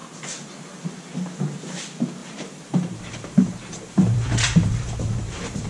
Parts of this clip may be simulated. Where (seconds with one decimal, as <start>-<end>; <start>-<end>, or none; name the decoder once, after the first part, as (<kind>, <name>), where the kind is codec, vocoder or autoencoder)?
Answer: 2.2-5.7 (vocoder, BigVGAN v2)